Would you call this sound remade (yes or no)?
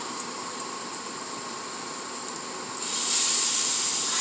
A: yes